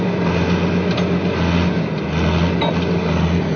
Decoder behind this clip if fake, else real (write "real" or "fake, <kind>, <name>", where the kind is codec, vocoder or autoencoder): real